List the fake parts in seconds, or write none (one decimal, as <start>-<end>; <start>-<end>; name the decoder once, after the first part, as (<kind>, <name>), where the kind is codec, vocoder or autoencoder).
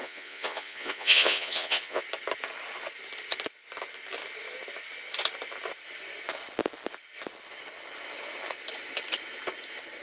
0.0-2.0 (vocoder, Vocos)